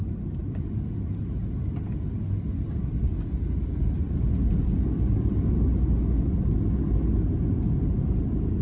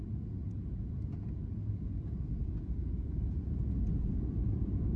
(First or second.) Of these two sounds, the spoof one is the second